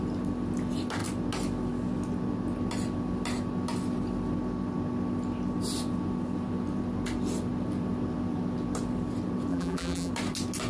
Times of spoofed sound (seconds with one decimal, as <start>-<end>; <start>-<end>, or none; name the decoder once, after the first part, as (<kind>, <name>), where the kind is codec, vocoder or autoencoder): 9.5-10.1 (vocoder, BigVGAN v2)